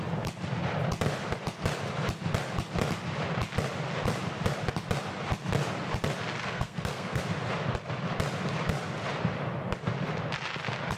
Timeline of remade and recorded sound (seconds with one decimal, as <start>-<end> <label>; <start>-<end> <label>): 0.0-6.4 recorded; 6.4-7.2 remade; 7.2-11.0 recorded